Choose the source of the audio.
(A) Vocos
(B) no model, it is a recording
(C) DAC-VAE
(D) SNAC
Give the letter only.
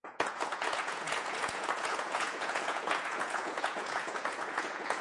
A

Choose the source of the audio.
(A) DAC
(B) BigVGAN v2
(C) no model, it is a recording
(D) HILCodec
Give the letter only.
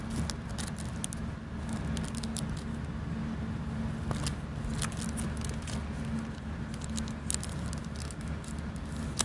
C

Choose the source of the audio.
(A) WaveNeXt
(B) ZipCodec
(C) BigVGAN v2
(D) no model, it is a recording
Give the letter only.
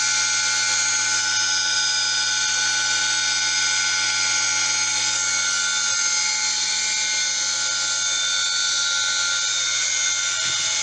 D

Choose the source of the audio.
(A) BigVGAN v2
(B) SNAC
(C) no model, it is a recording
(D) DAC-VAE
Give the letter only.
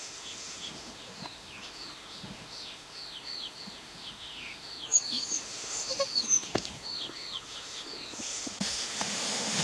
D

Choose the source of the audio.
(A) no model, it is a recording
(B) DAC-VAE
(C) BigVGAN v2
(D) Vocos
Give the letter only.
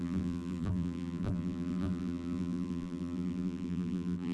C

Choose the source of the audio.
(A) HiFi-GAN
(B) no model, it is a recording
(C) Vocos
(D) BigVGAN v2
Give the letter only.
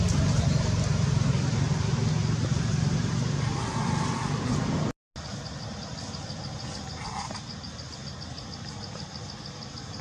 B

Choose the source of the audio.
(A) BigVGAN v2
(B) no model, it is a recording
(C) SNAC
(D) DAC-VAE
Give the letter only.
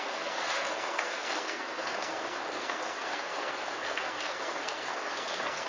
C